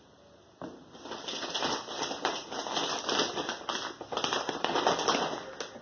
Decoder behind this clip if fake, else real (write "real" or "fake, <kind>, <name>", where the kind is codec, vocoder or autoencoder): real